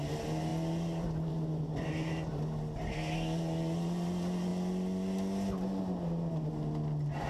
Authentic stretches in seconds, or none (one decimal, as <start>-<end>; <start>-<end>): 0.0-7.3